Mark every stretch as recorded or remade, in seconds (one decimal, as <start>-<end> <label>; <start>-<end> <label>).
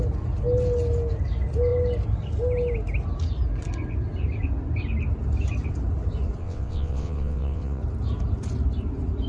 0.0-6.4 recorded; 6.4-7.8 remade; 7.8-9.3 recorded